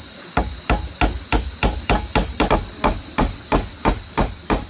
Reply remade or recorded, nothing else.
recorded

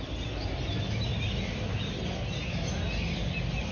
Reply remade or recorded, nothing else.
recorded